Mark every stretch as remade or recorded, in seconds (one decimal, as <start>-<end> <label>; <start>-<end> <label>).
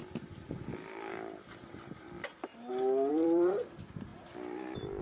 0.0-2.5 remade; 2.5-3.1 recorded; 3.1-4.1 remade; 4.1-5.0 recorded